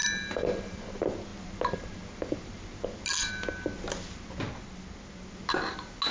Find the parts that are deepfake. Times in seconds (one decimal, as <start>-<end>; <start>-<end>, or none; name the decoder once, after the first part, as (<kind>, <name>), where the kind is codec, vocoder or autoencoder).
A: 0.0-0.8 (vocoder, BigVGAN v2)